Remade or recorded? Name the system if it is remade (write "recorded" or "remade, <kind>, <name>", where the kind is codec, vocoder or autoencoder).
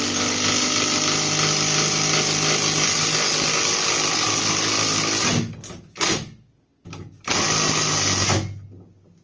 recorded